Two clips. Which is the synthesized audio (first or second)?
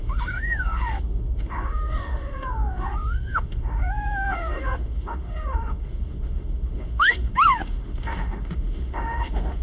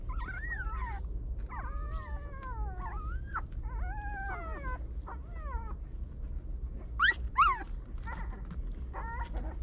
first